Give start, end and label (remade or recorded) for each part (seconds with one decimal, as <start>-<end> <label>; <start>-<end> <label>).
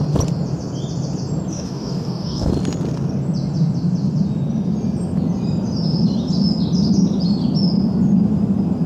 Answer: 0.0-1.5 recorded; 1.5-2.5 remade; 2.5-8.9 recorded